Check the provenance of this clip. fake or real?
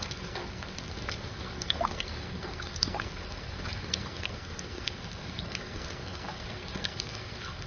fake